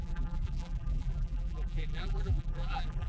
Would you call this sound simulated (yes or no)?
yes